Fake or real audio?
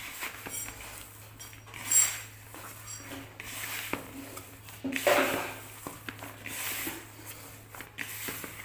real